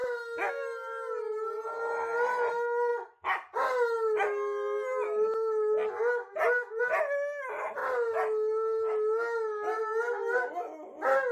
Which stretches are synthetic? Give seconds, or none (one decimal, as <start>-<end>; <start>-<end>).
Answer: none